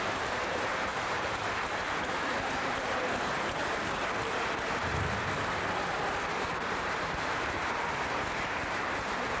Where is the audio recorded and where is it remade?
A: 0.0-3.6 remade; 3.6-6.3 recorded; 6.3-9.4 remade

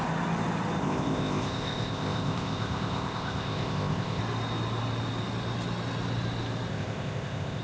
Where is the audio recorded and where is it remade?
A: 0.0-0.8 recorded; 0.8-4.2 remade; 4.2-6.7 recorded; 6.7-7.6 remade

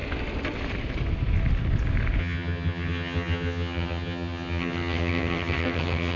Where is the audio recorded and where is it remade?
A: 0.0-2.2 recorded; 2.2-6.2 remade